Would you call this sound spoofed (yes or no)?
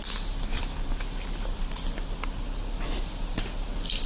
no